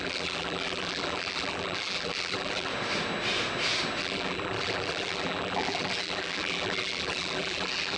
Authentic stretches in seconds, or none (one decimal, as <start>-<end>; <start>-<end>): 2.7-4.0

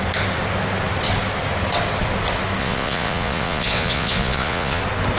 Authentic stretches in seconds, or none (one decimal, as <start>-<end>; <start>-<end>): 0.0-2.6; 4.8-5.2

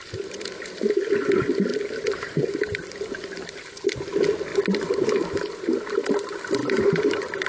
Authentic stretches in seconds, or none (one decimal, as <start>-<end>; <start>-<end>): 0.0-1.7; 2.4-6.6

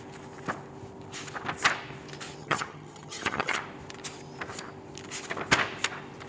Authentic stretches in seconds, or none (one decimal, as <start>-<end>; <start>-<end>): 0.0-2.4; 3.6-6.3

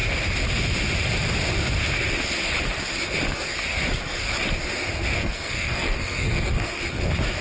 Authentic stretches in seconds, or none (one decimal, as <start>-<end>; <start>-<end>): 0.0-5.2; 6.8-7.4

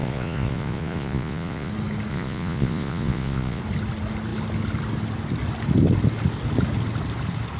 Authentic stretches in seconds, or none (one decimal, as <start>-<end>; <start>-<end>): 1.7-2.1; 3.6-7.6

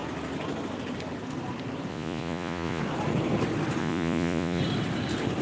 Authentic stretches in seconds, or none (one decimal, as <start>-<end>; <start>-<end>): 0.0-1.9; 2.8-3.8; 4.6-5.4